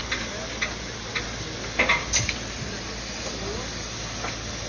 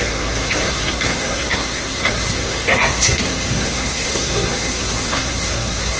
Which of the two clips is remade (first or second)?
second